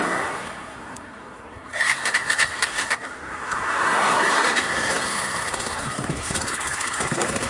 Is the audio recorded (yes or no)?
no